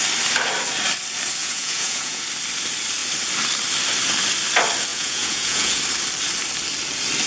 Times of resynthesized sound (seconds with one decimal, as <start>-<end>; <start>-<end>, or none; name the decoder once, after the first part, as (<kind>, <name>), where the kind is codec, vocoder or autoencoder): 1.4-2.2 (vocoder, Vocos); 4.9-5.8